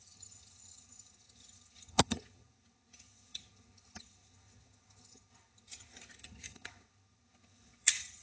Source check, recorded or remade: remade